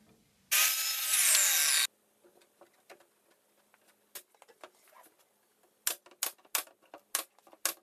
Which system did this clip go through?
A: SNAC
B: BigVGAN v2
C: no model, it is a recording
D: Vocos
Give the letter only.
C